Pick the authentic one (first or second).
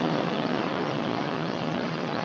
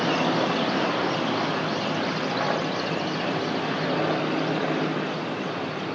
second